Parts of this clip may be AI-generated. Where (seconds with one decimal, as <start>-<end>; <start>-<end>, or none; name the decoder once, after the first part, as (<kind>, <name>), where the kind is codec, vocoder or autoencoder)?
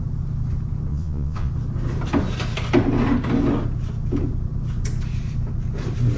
0.9-1.5 (vocoder, Vocos)